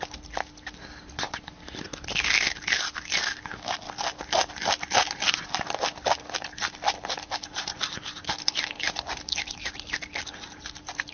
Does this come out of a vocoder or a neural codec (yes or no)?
no